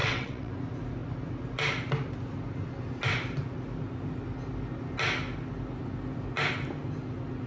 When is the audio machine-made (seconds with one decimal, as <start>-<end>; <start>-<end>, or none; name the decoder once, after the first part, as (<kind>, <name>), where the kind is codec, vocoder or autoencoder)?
0.0-0.5 (vocoder, WaveNeXt)